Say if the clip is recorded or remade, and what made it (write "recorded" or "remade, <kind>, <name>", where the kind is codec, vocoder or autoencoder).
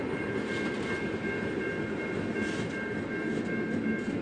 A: recorded